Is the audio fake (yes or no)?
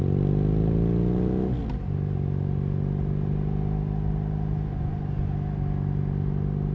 no